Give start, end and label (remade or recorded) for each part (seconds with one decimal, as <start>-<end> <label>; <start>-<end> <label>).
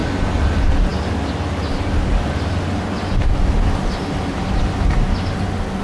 0.0-5.8 recorded